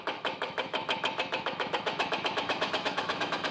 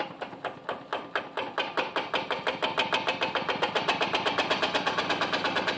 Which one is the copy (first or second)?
first